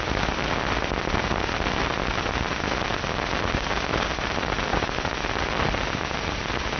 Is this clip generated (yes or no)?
no